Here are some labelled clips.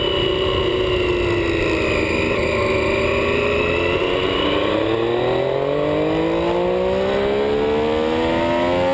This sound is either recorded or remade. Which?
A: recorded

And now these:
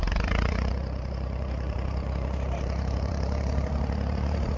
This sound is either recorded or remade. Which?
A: remade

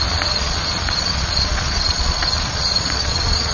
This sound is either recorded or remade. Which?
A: remade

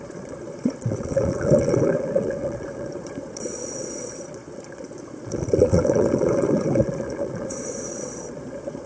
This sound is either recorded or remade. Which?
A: remade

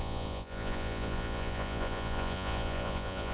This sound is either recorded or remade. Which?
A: remade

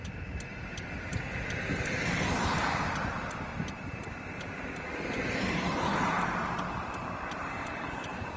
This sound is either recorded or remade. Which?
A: recorded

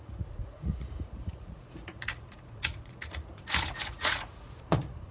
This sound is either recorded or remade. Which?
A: remade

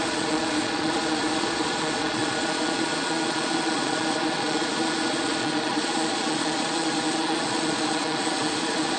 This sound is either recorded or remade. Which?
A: remade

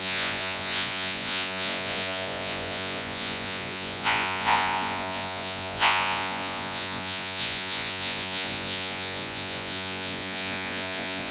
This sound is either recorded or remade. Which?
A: remade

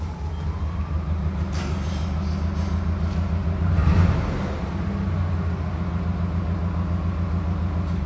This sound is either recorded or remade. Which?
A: recorded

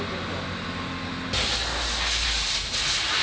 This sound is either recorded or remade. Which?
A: recorded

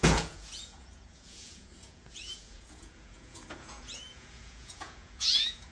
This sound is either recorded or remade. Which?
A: remade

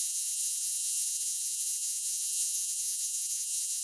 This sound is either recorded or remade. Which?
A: remade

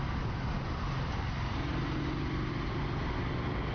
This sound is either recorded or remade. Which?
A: recorded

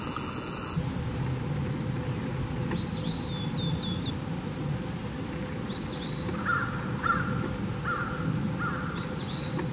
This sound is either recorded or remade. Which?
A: recorded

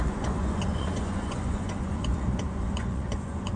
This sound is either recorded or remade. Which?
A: remade